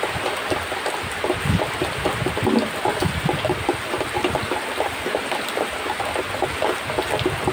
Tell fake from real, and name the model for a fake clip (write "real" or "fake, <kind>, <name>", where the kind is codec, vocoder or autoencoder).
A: fake, vocoder, BigVGAN v2